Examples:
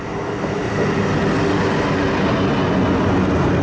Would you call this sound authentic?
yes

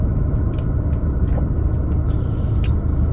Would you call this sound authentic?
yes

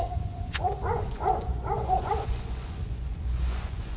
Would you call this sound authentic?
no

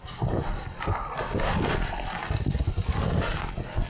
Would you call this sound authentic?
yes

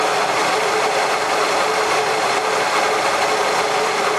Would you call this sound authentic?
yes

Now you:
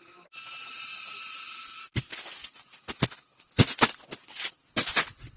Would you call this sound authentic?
yes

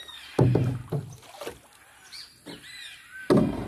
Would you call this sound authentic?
yes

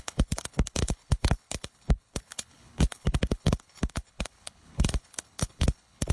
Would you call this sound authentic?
no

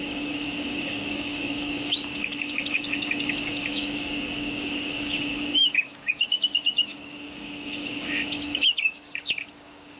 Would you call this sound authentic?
no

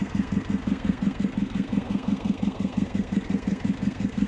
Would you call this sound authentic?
no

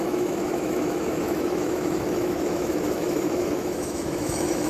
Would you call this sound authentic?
no